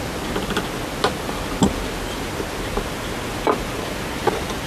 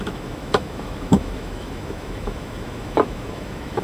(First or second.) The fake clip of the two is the second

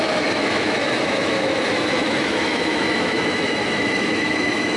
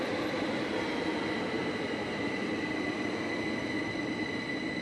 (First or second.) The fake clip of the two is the first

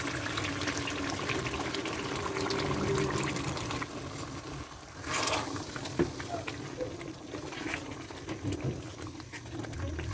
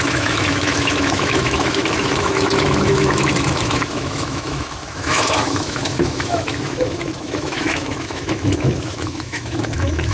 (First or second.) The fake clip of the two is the second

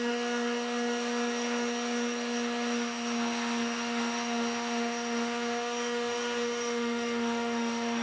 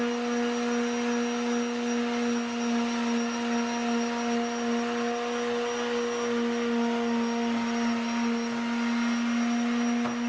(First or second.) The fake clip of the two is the first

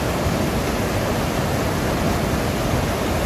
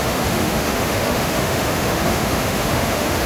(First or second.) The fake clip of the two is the second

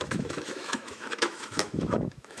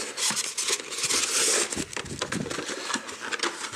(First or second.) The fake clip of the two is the first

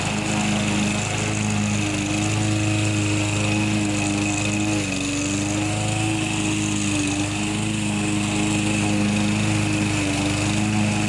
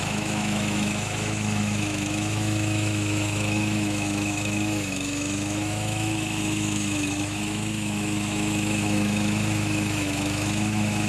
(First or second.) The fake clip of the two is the second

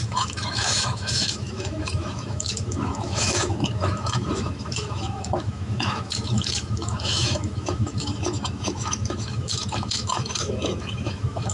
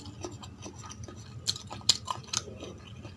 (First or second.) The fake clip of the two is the first